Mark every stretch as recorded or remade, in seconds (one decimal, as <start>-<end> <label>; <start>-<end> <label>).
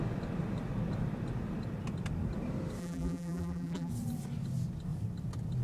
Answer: 0.0-2.8 recorded; 2.8-3.9 remade; 3.9-5.6 recorded